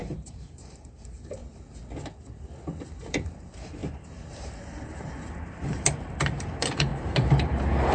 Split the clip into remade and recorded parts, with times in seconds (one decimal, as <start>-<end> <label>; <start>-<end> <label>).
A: 0.0-1.4 remade; 1.4-3.0 recorded; 3.0-7.9 remade